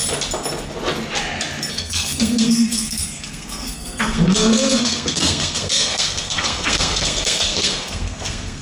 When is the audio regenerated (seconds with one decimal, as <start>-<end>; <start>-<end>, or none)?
1.7-8.6